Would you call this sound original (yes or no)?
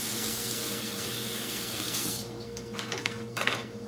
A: no